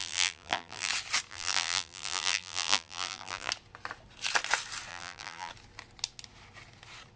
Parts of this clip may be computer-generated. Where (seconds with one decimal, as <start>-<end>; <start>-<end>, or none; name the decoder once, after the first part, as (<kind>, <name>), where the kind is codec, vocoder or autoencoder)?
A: 0.0-0.9 (vocoder, BigVGAN v2); 1.3-3.5; 4.9-5.5